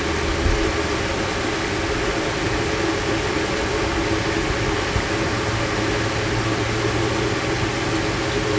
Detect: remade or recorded recorded